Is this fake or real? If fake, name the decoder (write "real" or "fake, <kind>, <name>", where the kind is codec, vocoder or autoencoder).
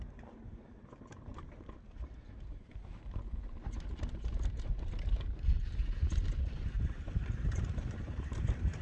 fake, vocoder, BigVGAN v2